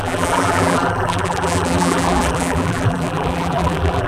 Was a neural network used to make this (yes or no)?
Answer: yes